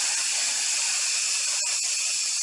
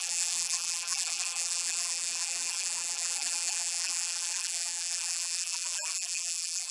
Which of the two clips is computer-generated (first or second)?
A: second